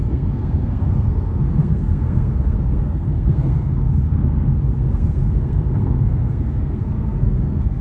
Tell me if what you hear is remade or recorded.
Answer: remade